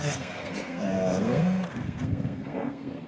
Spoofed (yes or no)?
yes